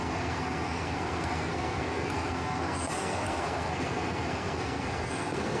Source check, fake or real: fake